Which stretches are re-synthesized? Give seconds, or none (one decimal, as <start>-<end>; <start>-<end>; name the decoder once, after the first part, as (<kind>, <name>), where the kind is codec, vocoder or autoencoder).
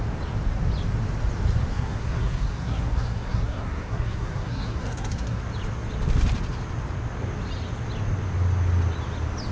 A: 1.7-5.4 (codec, SNAC)